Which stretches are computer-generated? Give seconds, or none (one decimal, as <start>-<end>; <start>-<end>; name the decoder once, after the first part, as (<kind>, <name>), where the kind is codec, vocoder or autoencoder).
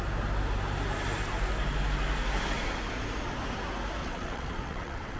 4.0-5.2 (vocoder, WaveNeXt)